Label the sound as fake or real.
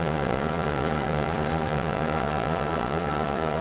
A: fake